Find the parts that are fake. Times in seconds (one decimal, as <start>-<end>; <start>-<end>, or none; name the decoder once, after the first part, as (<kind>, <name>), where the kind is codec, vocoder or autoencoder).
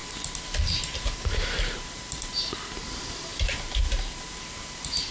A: 0.7-2.3 (vocoder, BigVGAN v2); 2.8-5.1